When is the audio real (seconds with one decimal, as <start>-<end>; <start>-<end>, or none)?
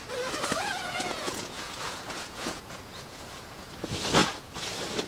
0.0-0.6; 3.7-5.1